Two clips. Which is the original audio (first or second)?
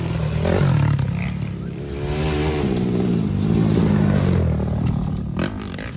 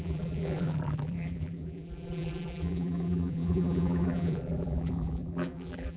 first